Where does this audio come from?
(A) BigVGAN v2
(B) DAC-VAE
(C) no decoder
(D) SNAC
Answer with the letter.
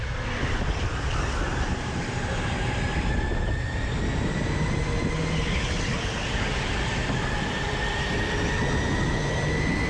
C